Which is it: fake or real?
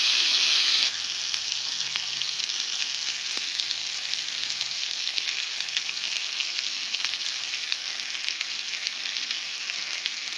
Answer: fake